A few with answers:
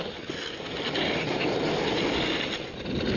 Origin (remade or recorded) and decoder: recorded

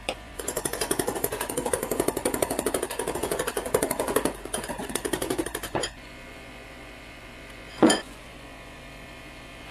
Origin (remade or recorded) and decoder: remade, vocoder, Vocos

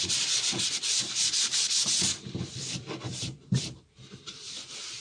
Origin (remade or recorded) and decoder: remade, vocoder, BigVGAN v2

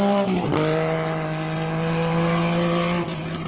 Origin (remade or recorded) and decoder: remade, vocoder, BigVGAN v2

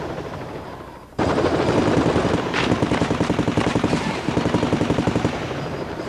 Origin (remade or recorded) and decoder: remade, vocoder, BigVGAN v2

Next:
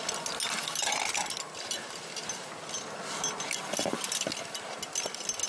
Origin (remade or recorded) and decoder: recorded